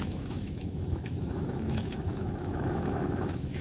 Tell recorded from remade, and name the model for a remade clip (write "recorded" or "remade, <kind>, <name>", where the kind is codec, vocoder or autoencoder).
remade, autoencoder, DAC-VAE